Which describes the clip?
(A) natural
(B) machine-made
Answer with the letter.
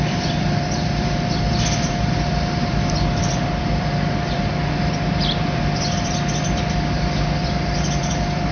B